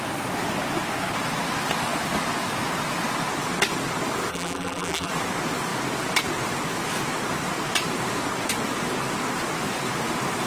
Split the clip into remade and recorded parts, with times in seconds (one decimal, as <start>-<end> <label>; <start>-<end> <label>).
0.0-4.3 recorded; 4.3-5.1 remade; 5.1-10.5 recorded